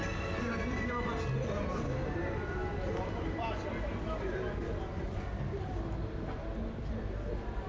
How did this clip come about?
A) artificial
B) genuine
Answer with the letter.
B